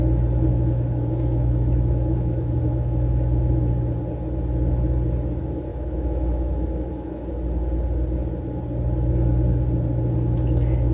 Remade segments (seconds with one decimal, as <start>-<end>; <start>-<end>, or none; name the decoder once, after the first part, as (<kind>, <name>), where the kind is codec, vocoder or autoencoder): 0.5-3.7 (autoencoder, DAC-VAE); 5.7-7.3